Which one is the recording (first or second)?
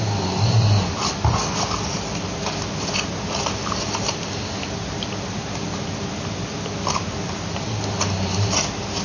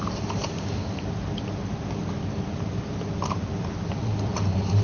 first